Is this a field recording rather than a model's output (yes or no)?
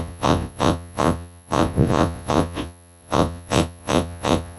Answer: no